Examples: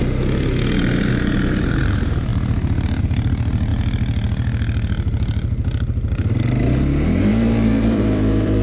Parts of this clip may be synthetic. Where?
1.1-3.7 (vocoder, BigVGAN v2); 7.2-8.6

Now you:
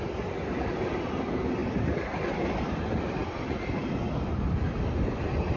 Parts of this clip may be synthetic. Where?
0.0-5.6 (vocoder, BigVGAN v2)

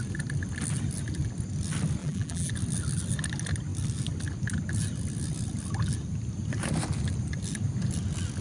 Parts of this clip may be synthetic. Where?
2.0-2.5 (vocoder, BigVGAN v2)

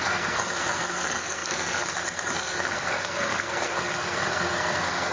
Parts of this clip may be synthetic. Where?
0.0-5.1 (codec, SNAC)